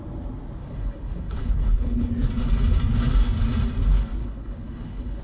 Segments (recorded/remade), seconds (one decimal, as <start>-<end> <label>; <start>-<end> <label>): 0.0-0.6 recorded; 0.6-2.1 remade; 2.1-4.2 recorded; 4.2-5.2 remade